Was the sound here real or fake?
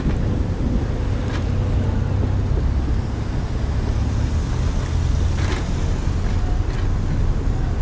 real